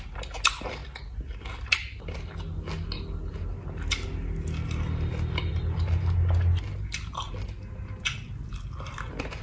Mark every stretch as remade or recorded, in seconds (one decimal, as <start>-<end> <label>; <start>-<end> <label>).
0.0-9.4 recorded

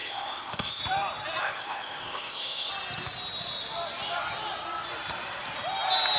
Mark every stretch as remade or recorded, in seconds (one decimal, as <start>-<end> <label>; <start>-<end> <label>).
0.0-0.8 remade; 0.8-1.4 recorded; 1.4-2.7 remade; 2.7-6.2 recorded

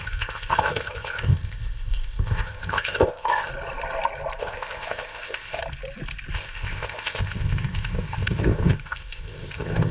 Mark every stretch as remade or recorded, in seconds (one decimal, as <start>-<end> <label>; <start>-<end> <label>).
0.0-3.5 remade; 3.5-4.4 recorded; 4.4-5.6 remade; 5.6-6.3 recorded; 6.3-9.9 remade

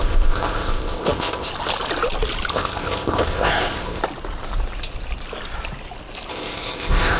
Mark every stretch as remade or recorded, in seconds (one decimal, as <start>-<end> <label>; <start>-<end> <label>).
0.0-1.5 remade; 1.5-2.5 recorded; 2.5-4.0 remade; 4.0-6.3 recorded; 6.3-7.2 remade

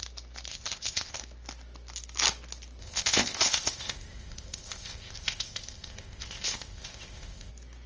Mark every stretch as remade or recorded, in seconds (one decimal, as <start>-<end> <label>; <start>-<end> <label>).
0.0-0.5 recorded; 0.5-1.2 remade; 1.2-2.8 recorded; 2.8-7.5 remade; 7.5-7.9 recorded

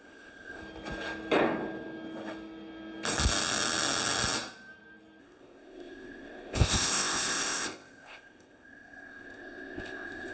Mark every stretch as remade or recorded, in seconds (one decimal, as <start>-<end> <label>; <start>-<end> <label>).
0.0-0.6 remade; 0.6-5.2 recorded; 5.2-10.3 remade